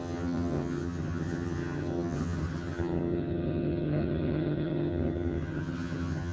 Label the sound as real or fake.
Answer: fake